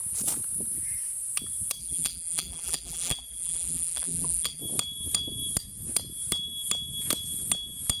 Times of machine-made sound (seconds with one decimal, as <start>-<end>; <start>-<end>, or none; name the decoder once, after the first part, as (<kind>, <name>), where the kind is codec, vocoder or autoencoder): 1.8-4.6 (vocoder, BigVGAN v2)